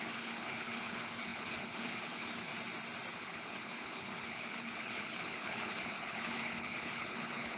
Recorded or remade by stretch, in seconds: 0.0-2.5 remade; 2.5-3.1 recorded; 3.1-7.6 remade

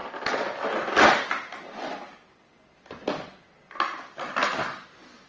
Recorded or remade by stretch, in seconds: 0.0-5.3 recorded